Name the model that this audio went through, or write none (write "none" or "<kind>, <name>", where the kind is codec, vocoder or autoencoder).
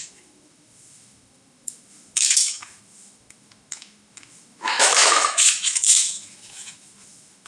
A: autoencoder, DAC-VAE